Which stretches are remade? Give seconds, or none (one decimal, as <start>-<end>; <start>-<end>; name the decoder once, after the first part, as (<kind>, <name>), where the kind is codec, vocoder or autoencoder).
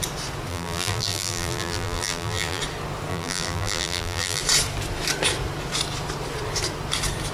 0.5-2.6 (vocoder, BigVGAN v2); 3.1-4.4